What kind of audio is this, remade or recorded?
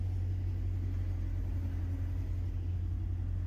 recorded